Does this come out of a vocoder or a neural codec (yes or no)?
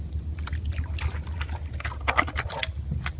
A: no